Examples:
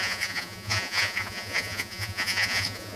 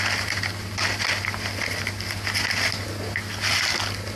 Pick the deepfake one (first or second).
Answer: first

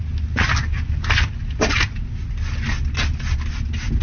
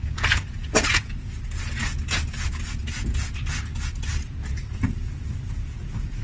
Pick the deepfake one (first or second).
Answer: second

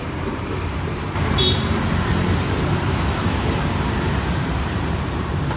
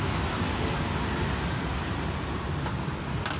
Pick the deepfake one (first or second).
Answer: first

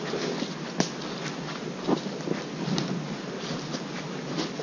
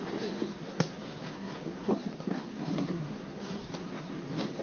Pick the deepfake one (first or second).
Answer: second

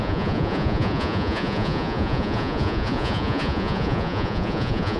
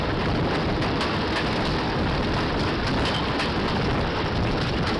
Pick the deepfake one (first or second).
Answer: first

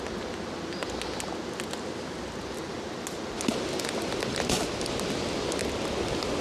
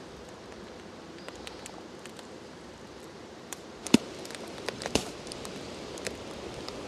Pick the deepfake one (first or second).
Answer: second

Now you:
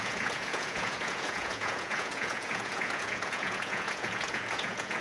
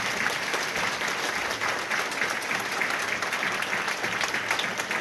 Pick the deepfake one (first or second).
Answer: first